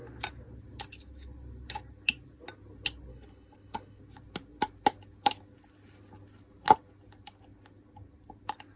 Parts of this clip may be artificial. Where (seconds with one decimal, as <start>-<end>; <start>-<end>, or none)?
3.1-4.0

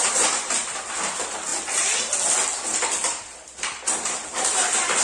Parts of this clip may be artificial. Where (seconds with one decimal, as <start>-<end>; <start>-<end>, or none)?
2.7-4.6

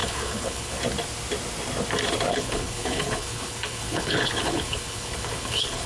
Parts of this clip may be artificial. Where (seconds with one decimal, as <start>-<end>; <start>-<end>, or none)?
0.0-0.8; 2.3-5.9

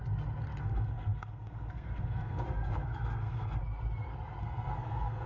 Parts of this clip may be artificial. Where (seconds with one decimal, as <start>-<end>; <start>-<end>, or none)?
0.6-3.6; 4.4-5.3

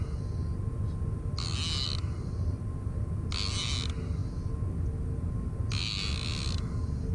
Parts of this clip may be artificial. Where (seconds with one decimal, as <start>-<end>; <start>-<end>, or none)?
none

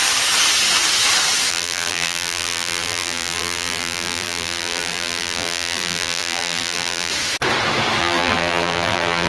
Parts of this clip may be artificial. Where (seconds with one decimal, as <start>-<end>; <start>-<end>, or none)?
1.5-7.1; 8.0-9.3